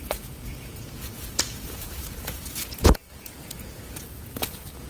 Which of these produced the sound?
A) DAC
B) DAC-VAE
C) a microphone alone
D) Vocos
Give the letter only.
D